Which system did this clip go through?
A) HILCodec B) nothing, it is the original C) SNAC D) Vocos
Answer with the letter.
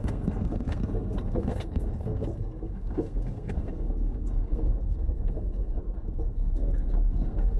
C